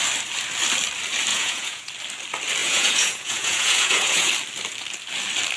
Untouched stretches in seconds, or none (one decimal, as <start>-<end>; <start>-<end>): 0.0-1.3; 1.9-2.6; 4.3-5.6